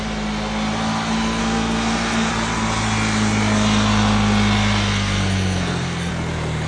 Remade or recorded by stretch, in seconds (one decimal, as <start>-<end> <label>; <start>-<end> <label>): 0.0-1.4 recorded; 1.4-2.3 remade; 2.3-4.9 recorded; 4.9-6.1 remade; 6.1-6.7 recorded

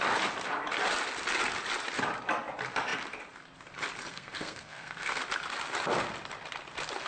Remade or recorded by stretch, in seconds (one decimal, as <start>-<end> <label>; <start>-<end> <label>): 0.0-4.1 recorded; 4.1-5.2 remade; 5.2-7.1 recorded